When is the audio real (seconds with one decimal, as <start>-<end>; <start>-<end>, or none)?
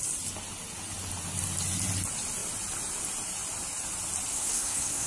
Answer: 0.0-4.3